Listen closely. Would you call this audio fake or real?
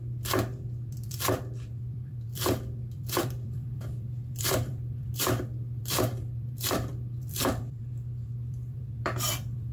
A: fake